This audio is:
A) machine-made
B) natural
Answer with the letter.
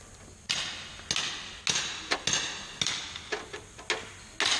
B